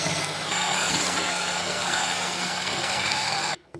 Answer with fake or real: fake